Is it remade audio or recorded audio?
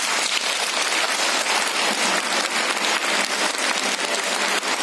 recorded